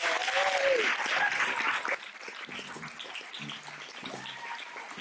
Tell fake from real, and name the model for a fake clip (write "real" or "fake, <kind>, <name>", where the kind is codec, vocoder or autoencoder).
real